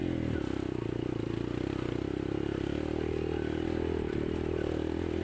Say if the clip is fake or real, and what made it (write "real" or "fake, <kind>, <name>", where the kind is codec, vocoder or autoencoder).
real